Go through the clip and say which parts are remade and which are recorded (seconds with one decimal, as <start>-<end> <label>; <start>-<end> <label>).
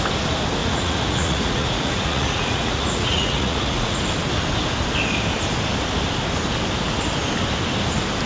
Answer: 0.0-0.6 recorded; 0.6-4.0 remade; 4.0-8.3 recorded